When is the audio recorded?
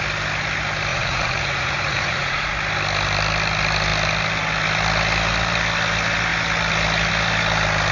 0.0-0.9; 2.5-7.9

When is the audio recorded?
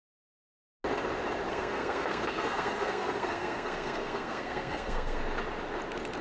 0.0-1.5; 5.2-6.2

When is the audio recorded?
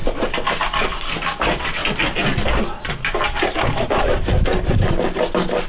0.0-5.7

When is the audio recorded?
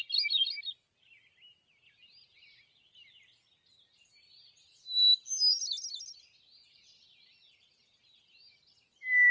0.0-9.3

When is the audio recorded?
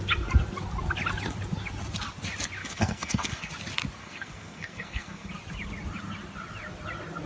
0.0-2.6; 3.5-4.0; 5.3-7.3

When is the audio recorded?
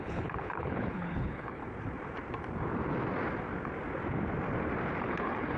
1.6-5.0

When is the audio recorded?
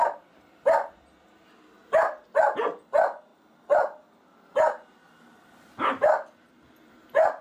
0.0-7.4